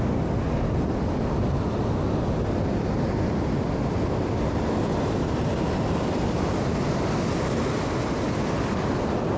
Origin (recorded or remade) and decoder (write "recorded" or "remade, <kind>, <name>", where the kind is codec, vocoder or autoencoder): recorded